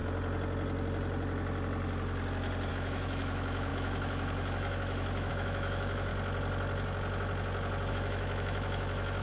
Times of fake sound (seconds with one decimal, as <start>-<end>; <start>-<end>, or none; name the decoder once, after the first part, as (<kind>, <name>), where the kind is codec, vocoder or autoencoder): 2.7-6.1 (autoencoder, DAC-VAE); 7.9-9.2